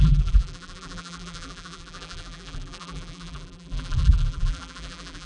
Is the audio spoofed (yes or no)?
yes